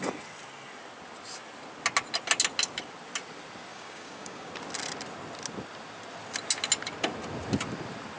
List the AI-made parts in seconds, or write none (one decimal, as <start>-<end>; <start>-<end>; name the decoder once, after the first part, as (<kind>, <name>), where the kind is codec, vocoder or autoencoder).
3.7-4.5 (codec, DAC)